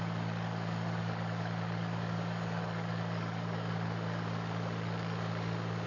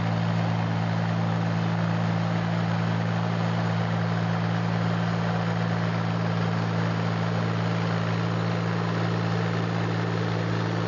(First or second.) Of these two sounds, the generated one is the first